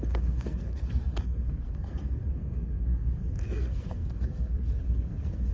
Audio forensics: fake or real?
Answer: fake